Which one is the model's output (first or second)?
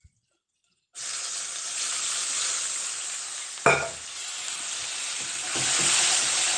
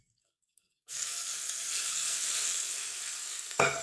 second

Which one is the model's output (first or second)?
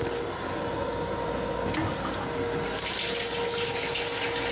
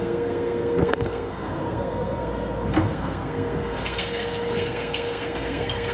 second